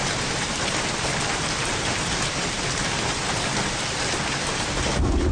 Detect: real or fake real